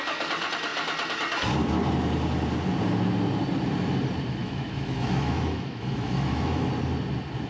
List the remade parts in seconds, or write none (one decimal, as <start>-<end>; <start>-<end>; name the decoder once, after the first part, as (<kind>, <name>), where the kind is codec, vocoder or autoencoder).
4.4-6.7 (autoencoder, DAC-VAE)